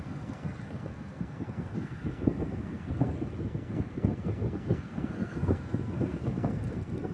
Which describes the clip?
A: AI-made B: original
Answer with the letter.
A